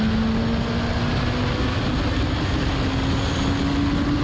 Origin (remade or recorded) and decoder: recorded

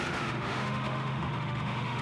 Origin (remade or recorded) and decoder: remade, autoencoder, DAC-VAE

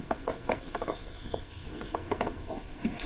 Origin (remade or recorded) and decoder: remade, codec, SNAC